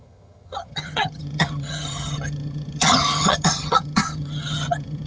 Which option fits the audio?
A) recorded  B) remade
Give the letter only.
B